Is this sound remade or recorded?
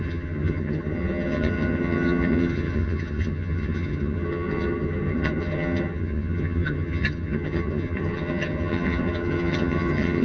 remade